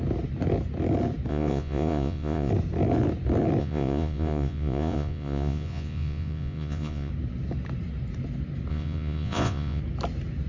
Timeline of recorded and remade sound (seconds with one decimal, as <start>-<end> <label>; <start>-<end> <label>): 0.0-1.3 recorded; 1.3-2.5 remade; 2.5-3.6 recorded; 3.6-7.1 remade; 7.1-8.7 recorded; 8.7-9.8 remade; 9.8-10.5 recorded

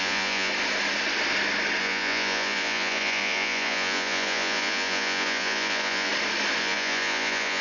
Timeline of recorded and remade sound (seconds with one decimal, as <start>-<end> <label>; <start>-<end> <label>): 0.0-0.5 remade; 0.5-1.8 recorded; 1.8-6.1 remade; 6.1-6.6 recorded; 6.6-7.6 remade

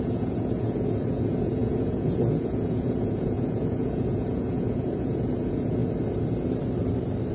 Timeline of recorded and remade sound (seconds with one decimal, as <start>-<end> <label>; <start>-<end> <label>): 0.0-5.8 remade; 5.8-7.3 recorded

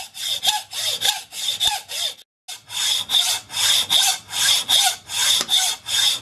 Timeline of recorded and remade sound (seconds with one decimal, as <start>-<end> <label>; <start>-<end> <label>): 0.0-6.2 recorded